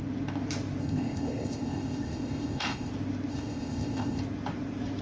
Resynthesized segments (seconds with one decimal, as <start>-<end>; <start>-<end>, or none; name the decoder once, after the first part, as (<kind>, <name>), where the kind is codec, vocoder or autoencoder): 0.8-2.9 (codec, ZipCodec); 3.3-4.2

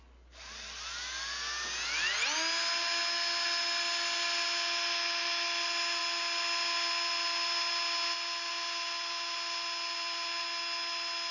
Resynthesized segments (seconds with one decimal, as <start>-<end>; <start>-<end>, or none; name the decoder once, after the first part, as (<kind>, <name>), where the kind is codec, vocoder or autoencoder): none

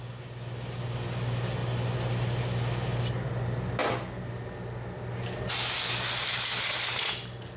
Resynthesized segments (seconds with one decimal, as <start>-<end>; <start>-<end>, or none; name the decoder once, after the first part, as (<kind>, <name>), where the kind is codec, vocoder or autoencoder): none